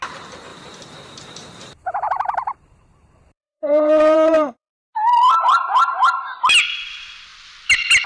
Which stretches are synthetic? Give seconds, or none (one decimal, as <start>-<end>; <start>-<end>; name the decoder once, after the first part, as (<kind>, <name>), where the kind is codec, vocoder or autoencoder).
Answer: 0.5-4.7 (vocoder, BigVGAN v2); 5.6-6.1